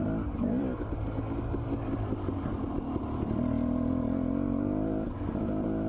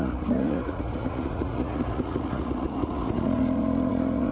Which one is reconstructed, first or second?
second